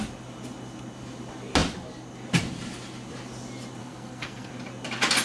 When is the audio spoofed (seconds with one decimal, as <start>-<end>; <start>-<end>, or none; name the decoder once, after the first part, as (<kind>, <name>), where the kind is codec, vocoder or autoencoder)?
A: 3.8-4.5 (codec, SNAC)